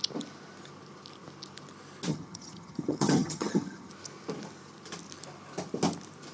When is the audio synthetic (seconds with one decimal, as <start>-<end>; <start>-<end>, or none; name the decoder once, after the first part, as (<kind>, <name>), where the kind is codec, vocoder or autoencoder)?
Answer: 2.1-3.9 (vocoder, HiFi-GAN)